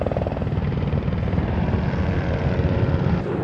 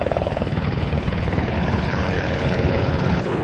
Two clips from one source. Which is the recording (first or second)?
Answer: first